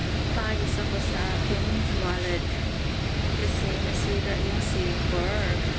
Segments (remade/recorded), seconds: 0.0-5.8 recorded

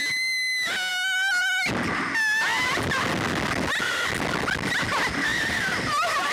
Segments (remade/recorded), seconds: 0.0-5.3 recorded; 5.3-6.3 remade

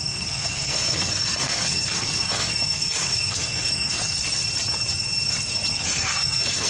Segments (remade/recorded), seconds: 0.0-4.2 remade; 4.2-5.7 recorded; 5.7-6.7 remade

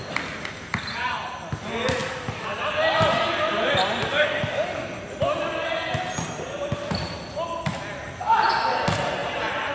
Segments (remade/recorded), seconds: 0.0-2.0 recorded; 2.0-4.5 remade; 4.5-9.2 recorded; 9.2-9.7 remade